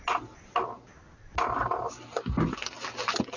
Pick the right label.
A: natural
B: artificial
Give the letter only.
A